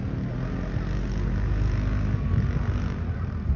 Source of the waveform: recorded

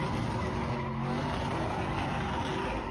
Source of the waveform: recorded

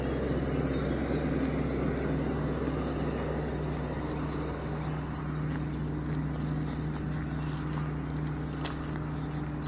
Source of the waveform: recorded